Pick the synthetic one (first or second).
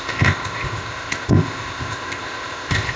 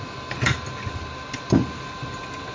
first